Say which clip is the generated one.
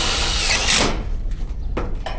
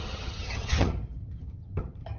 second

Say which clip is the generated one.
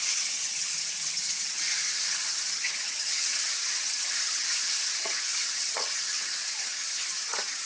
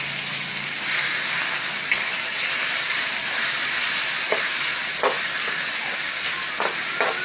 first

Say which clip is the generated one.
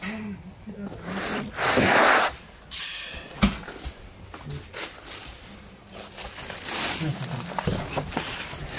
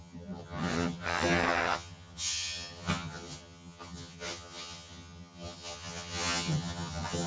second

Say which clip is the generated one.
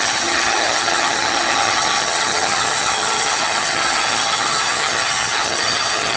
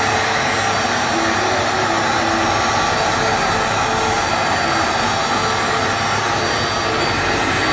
first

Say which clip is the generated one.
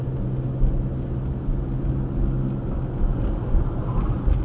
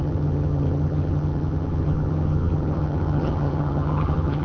second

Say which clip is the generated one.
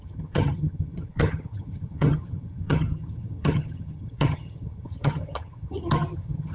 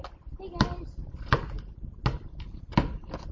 first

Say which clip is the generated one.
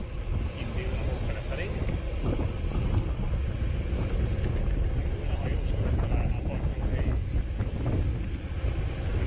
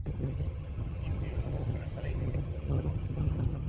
second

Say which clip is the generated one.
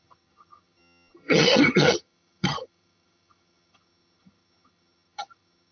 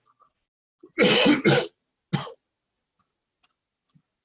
first